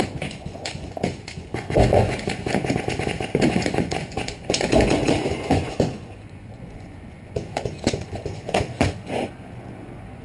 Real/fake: fake